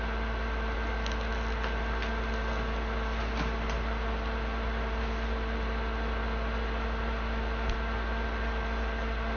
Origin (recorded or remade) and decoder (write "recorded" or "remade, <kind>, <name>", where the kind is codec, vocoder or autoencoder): recorded